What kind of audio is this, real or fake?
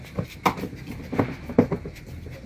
real